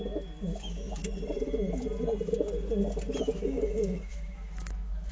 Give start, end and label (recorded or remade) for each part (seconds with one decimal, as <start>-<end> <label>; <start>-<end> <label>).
0.0-1.0 remade; 1.0-3.2 recorded; 3.2-5.1 remade

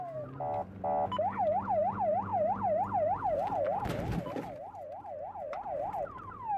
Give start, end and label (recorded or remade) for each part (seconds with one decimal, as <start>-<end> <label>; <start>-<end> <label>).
0.0-6.6 recorded

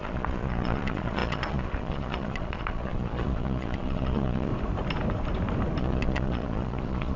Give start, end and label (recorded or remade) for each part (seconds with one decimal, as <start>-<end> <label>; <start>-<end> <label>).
0.0-4.5 remade; 4.5-5.8 recorded; 5.8-7.2 remade

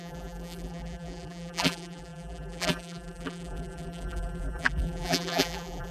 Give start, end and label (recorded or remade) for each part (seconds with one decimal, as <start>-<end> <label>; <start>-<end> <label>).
0.0-5.9 remade